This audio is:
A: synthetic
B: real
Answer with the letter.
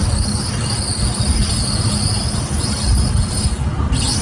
B